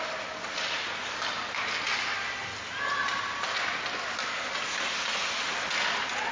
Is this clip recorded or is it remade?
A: recorded